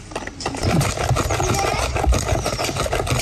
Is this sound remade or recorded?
recorded